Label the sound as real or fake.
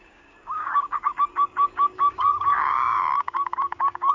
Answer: fake